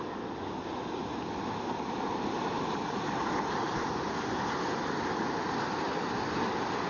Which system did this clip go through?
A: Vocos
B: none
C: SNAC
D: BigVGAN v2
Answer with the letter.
B